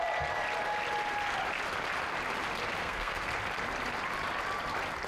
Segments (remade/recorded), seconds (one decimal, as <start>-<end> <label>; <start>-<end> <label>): 0.0-2.8 recorded; 2.8-3.3 remade; 3.3-5.1 recorded